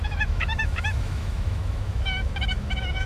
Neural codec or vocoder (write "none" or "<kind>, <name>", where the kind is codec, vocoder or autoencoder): autoencoder, DAC-VAE